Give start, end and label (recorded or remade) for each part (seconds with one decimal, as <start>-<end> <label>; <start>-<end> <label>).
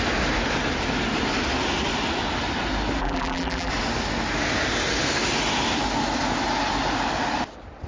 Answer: 0.0-3.0 recorded; 3.0-3.7 remade; 3.7-7.9 recorded